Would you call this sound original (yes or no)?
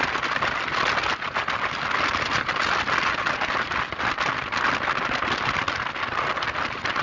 yes